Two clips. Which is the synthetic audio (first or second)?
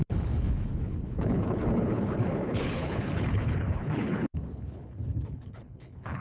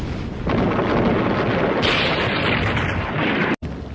first